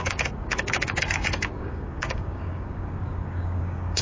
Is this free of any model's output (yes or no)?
no